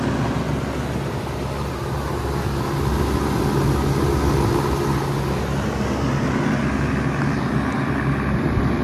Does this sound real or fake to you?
real